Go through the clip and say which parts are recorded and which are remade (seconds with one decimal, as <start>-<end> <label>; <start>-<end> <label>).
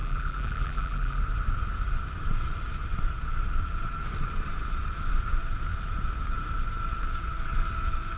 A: 0.0-1.2 remade; 1.2-8.2 recorded